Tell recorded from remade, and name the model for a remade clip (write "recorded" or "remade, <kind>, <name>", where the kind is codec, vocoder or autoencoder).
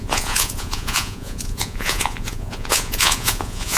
remade, vocoder, Vocos